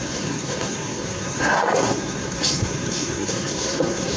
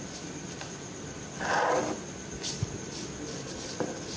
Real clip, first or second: second